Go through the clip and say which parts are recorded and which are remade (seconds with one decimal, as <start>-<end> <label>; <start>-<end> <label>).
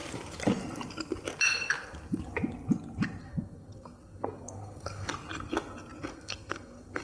0.0-3.2 recorded; 3.2-5.1 remade; 5.1-6.1 recorded; 6.1-7.0 remade